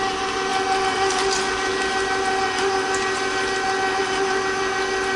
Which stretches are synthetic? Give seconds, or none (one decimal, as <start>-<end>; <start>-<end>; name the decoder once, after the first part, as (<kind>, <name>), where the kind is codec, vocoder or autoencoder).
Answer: none